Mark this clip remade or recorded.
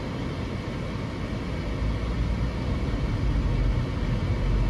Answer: recorded